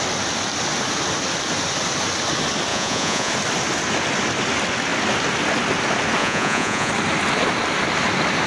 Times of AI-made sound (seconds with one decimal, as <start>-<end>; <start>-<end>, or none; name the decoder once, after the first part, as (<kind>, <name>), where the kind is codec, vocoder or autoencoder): 2.7-3.3 (vocoder, Vocos); 6.2-6.9